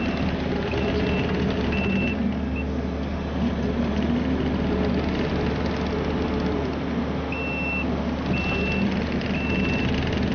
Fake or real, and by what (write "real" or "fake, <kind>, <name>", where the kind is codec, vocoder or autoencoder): real